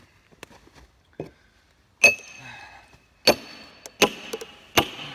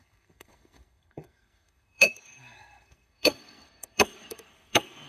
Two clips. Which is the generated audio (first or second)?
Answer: second